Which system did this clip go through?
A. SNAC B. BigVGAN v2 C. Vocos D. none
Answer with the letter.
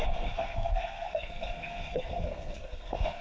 A